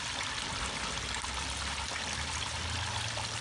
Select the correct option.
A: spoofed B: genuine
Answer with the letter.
B